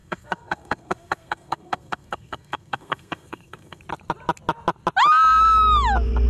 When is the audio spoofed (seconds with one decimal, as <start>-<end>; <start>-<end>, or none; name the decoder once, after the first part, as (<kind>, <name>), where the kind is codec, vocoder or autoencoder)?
0.0-3.8 (codec, SNAC)